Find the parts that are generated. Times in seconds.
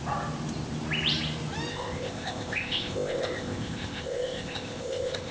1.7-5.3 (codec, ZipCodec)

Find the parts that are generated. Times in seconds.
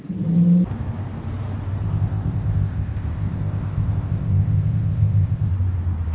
1.8-5.5 (codec, ZipCodec)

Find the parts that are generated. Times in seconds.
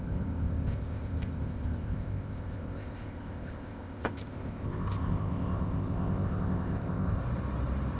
0.0-7.2 (codec, ZipCodec)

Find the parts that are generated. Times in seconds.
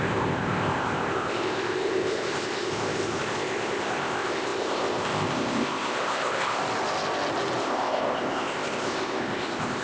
0.0-6.6 (codec, ZipCodec); 7.6-9.8